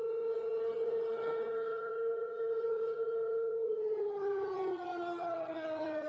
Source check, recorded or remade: remade